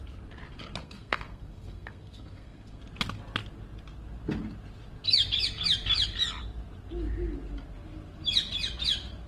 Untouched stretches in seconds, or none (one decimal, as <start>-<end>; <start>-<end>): 0.0-0.8; 2.8-9.3